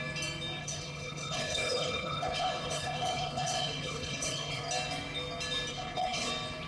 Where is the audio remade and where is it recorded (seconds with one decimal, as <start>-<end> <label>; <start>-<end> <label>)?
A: 0.0-0.6 recorded; 0.6-4.6 remade; 4.6-5.7 recorded; 5.7-6.3 remade; 6.3-6.7 recorded